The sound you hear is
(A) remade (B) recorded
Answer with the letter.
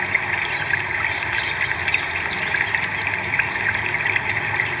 B